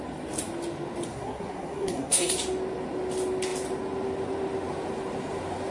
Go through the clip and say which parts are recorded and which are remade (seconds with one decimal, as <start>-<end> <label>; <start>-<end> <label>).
0.0-1.1 recorded; 1.1-2.3 remade; 2.3-5.7 recorded